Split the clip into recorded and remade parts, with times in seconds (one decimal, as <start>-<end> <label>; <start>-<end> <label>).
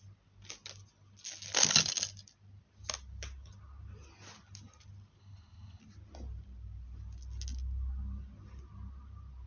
0.0-5.2 recorded; 5.2-5.8 remade; 5.8-9.5 recorded